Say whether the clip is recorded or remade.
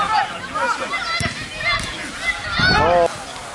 recorded